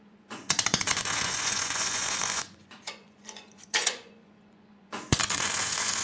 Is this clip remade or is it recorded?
remade